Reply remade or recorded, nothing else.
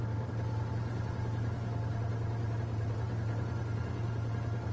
recorded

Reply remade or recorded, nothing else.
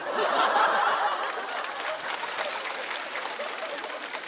recorded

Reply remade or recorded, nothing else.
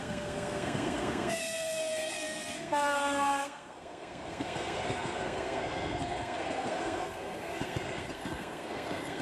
remade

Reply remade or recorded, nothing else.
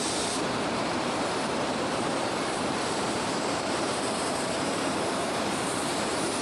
remade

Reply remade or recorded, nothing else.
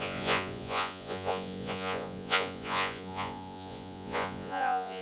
remade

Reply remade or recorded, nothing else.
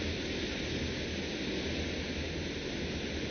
recorded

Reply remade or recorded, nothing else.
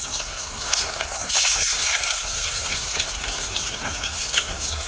remade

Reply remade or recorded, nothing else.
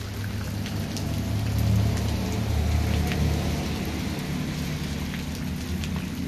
recorded